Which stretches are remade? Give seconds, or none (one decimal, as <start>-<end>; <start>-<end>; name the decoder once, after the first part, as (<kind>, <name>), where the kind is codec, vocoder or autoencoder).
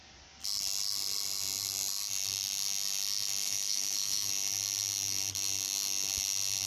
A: 3.4-4.3 (autoencoder, DAC-VAE)